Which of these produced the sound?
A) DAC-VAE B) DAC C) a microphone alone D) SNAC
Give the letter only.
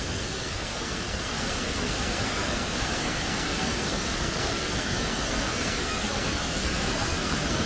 D